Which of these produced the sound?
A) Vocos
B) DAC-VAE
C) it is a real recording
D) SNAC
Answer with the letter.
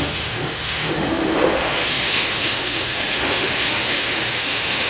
B